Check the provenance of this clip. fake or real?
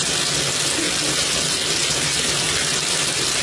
real